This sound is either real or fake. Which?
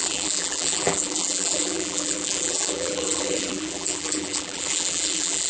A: fake